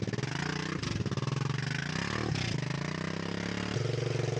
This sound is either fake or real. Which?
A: real